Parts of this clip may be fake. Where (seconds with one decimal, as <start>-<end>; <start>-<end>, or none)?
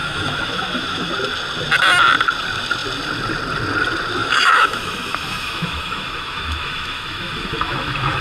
0.0-1.1; 4.2-8.2